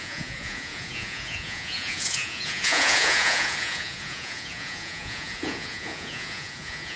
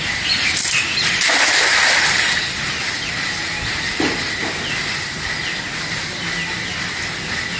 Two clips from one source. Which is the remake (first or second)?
first